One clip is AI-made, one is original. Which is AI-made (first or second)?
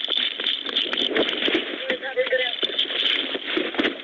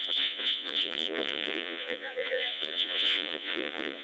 second